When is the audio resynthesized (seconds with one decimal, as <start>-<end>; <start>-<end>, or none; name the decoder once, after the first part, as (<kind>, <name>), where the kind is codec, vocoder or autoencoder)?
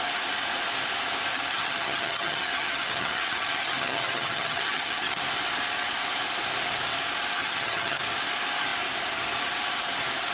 1.3-5.2 (vocoder, HiFi-GAN); 7.4-8.0